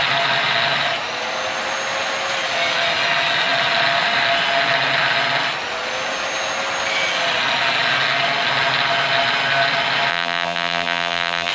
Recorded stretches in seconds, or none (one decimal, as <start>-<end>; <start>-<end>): 0.0-10.1